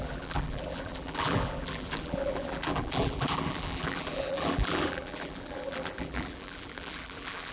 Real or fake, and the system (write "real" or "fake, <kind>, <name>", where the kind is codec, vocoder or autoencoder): fake, vocoder, BigVGAN v2